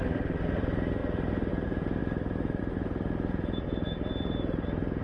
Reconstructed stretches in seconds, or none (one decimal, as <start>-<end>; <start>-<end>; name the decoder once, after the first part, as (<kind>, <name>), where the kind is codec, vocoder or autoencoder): none